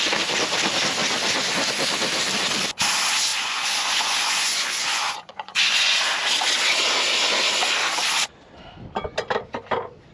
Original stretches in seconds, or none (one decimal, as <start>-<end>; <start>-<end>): 0.0-3.3; 6.0-10.1